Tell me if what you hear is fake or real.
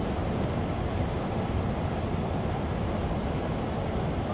real